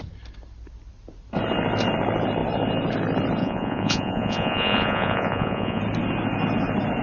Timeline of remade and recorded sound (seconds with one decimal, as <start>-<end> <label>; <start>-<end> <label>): 0.0-3.4 recorded; 3.4-5.8 remade; 5.8-7.0 recorded

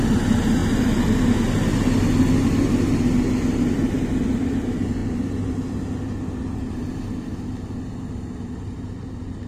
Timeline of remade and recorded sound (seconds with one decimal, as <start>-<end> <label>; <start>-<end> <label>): 0.0-9.5 recorded

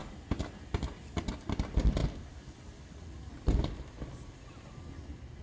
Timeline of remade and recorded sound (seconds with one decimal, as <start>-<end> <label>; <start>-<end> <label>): 0.0-5.4 recorded

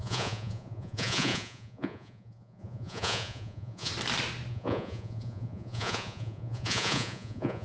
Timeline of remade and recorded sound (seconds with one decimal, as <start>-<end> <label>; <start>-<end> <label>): 0.0-3.9 remade; 3.9-4.5 recorded; 4.5-7.6 remade